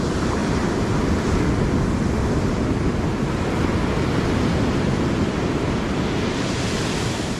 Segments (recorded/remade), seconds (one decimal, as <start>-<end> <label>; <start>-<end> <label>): 0.0-0.4 remade; 0.4-4.5 recorded; 4.5-7.4 remade